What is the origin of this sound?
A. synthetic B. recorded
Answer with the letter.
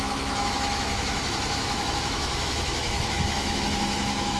A